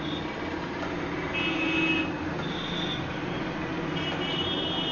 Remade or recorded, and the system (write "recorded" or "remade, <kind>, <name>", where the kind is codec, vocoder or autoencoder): recorded